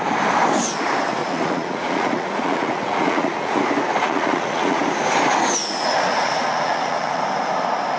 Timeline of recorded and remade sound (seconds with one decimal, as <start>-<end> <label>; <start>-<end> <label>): 0.0-1.2 recorded; 1.2-3.6 remade; 3.6-4.0 recorded; 4.0-4.8 remade; 4.8-5.6 recorded; 5.6-7.2 remade; 7.2-8.0 recorded